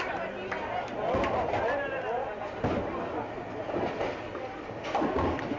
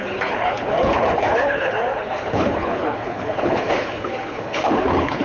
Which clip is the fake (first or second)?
second